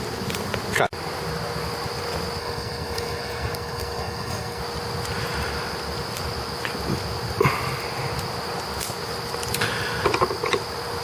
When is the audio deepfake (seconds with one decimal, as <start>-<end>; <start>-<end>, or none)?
2.4-4.6